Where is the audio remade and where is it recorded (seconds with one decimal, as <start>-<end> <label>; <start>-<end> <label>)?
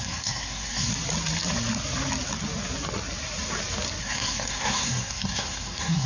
0.0-0.9 remade; 0.9-4.0 recorded; 4.0-6.1 remade